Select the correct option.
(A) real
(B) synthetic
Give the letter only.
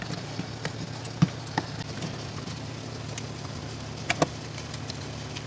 A